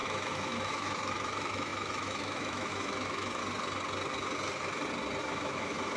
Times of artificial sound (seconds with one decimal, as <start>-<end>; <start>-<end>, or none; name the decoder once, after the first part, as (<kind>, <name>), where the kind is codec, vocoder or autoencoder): 0.0-3.4 (autoencoder, DAC-VAE); 5.2-6.0

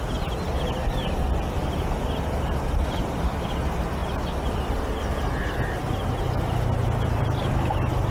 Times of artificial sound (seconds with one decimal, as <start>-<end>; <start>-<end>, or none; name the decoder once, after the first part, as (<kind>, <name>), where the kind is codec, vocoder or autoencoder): none

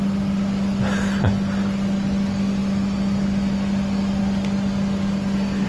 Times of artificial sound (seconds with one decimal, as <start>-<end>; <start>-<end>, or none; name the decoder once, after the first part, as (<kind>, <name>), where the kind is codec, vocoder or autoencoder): none

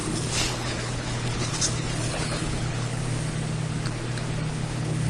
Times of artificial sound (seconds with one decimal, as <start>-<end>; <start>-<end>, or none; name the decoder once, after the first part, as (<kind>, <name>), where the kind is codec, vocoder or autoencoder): 0.0-3.0 (codec, HILCodec); 4.5-5.1

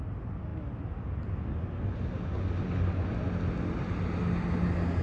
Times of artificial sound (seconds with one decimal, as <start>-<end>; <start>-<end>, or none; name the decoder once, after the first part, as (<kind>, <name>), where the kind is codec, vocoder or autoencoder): none

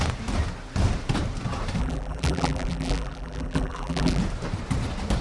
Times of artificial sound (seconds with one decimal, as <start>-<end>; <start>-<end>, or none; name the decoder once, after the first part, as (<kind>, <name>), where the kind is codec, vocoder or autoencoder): 1.8-4.2 (vocoder, BigVGAN v2)